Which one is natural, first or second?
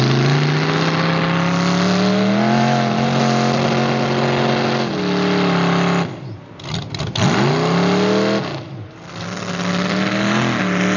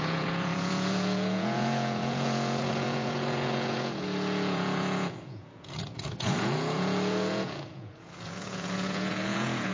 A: first